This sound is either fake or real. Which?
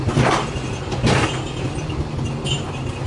real